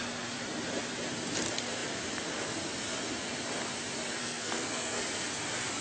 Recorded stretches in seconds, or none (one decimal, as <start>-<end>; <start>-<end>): 0.0-4.2; 5.0-5.8